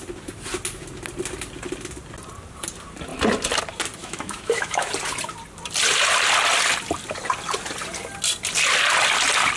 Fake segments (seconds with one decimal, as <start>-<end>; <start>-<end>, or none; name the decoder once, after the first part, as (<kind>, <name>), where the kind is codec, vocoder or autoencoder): 4.0-4.9 (autoencoder, DAC-VAE)